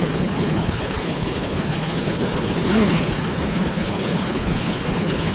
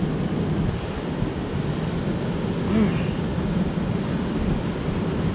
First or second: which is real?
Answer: second